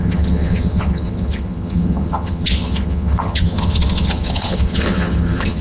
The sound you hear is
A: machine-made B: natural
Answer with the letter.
A